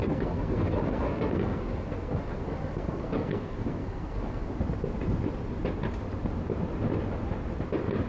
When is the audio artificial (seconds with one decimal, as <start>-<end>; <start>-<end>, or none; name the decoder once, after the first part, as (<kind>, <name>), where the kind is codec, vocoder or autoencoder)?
0.0-4.5 (codec, SNAC)

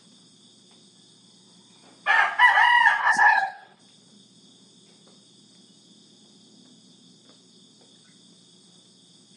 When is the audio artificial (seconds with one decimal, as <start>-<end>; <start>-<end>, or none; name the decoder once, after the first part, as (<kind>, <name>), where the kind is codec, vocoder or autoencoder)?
3.0-3.8 (codec, HILCodec)

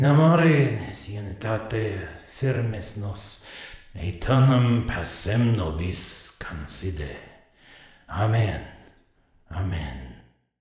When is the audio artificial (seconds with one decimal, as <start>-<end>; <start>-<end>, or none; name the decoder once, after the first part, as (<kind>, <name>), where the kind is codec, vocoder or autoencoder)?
0.0-6.6 (vocoder, BigVGAN v2); 8.4-8.8; 9.6-10.6

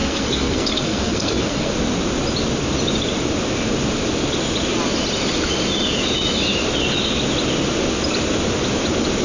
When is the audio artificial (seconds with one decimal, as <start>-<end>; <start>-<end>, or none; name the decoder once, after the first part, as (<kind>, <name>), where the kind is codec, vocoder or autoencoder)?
0.0-1.7 (codec, SNAC)

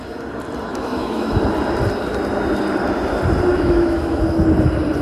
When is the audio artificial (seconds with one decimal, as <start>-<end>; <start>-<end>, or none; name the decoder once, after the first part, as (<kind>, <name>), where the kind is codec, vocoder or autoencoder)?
0.7-1.4 (autoencoder, DAC-VAE); 3.5-4.2